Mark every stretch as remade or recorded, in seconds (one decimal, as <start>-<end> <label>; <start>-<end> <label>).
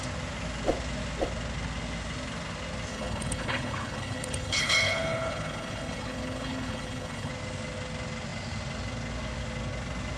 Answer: 0.0-2.9 recorded; 2.9-7.3 remade; 7.3-10.2 recorded